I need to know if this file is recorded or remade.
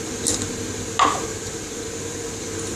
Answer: recorded